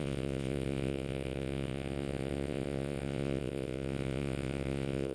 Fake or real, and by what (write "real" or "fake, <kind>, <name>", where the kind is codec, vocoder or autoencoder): fake, vocoder, Vocos